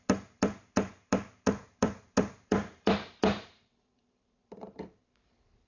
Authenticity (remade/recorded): remade